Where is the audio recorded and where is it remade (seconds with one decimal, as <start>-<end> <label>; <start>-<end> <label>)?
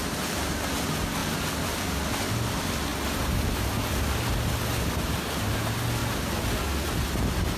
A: 0.0-7.6 recorded